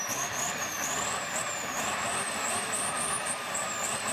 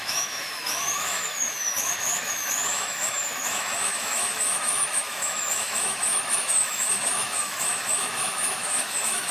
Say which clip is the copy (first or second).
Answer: second